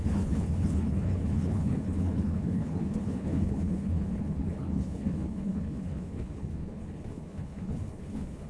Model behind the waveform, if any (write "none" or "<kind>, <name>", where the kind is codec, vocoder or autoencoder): codec, HILCodec